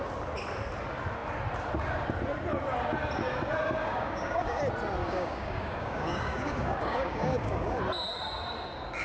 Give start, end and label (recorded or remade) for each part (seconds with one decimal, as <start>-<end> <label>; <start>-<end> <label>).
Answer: 0.0-3.8 recorded; 3.8-4.6 remade; 4.6-5.0 recorded; 5.0-7.8 remade; 7.8-9.0 recorded